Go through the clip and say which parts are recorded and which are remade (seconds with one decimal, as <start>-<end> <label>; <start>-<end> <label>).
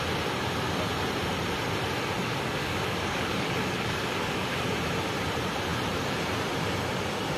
0.0-2.2 recorded; 2.2-4.7 remade; 4.7-7.4 recorded